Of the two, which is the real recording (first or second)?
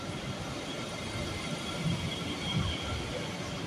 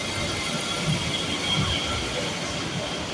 second